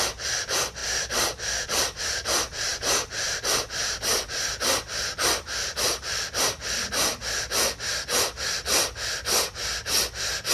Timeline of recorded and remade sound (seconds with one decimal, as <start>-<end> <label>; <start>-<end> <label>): 0.0-10.5 recorded